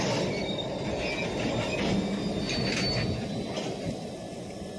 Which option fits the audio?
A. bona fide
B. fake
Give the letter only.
A